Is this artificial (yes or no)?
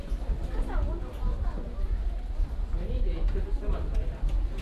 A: no